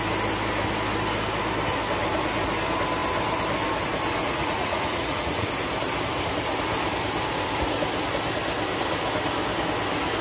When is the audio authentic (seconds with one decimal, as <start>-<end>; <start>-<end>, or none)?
0.0-4.2; 5.5-10.2